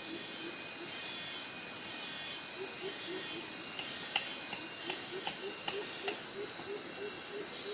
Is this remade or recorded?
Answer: recorded